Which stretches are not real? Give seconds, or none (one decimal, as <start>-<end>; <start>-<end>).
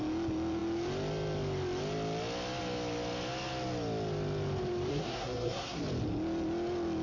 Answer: 4.9-5.8